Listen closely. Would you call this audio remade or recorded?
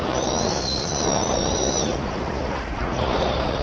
remade